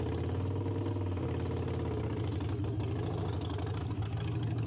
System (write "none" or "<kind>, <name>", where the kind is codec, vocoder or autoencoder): none